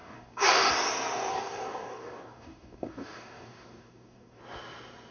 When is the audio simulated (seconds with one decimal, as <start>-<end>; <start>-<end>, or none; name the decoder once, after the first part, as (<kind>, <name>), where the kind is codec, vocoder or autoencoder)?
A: 0.0-0.7 (codec, DAC); 1.3-4.4